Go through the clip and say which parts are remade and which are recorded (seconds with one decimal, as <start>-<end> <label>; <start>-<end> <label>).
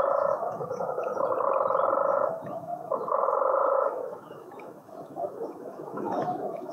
0.0-1.1 remade; 1.1-2.1 recorded; 2.1-6.7 remade